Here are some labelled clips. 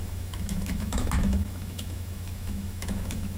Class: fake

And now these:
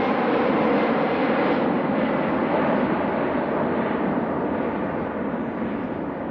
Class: real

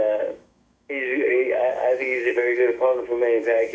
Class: fake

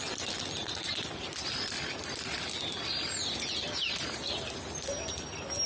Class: real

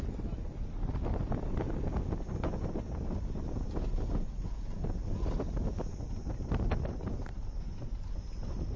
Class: real